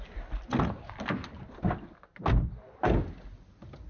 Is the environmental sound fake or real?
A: real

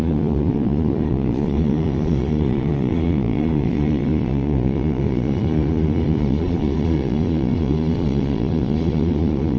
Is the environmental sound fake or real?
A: fake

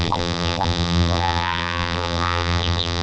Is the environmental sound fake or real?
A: fake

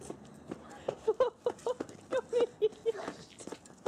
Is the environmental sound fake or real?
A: real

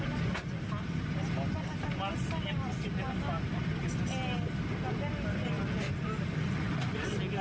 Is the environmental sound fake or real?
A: real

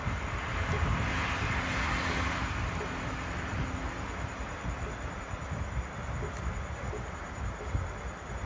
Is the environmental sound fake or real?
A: real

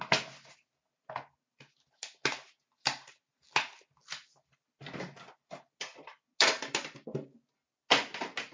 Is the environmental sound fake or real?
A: real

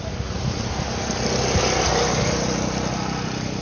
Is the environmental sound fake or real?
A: real